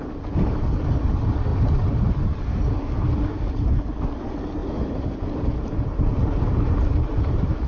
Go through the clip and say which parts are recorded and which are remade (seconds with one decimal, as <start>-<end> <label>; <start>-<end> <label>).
0.0-4.6 recorded; 4.6-6.4 remade; 6.4-7.1 recorded; 7.1-7.7 remade